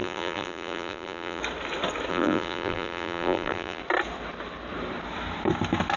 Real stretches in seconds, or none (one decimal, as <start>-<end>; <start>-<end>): 1.4-2.1; 3.8-6.0